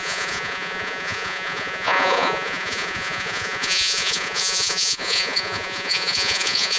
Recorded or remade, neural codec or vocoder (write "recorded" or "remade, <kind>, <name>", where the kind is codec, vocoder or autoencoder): remade, vocoder, Vocos